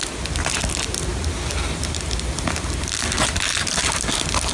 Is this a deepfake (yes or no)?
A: no